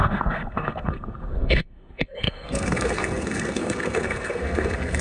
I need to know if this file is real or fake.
fake